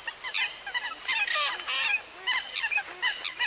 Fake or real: real